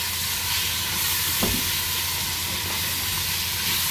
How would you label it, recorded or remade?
recorded